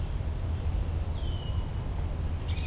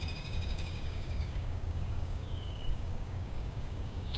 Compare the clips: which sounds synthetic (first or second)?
second